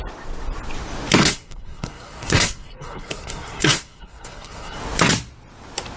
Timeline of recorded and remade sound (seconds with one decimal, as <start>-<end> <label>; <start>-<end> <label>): 0.0-1.2 recorded; 1.2-4.8 remade; 4.8-6.0 recorded